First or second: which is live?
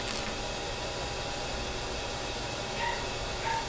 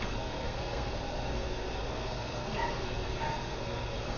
first